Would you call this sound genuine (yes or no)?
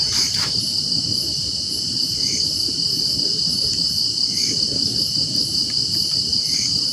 no